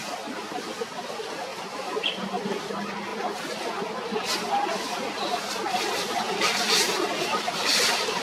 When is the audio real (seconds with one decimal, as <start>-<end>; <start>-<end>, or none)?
0.0-1.5; 2.7-8.2